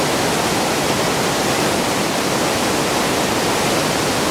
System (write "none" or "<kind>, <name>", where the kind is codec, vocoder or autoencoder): none